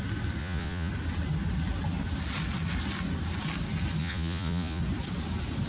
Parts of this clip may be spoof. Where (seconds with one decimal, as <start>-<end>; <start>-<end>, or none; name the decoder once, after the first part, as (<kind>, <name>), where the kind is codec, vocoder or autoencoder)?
0.4-0.9 (vocoder, Vocos); 4.0-4.8